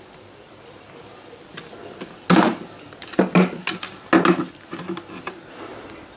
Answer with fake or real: real